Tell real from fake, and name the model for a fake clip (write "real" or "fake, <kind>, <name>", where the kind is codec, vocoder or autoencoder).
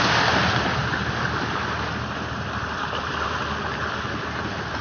real